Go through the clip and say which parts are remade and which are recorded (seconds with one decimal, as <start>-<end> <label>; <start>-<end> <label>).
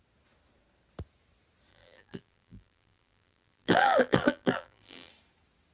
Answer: 0.0-1.7 recorded; 1.7-5.1 remade; 5.1-5.7 recorded